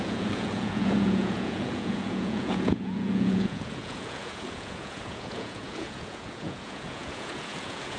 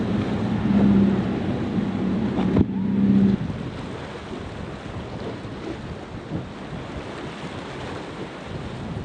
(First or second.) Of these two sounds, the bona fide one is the second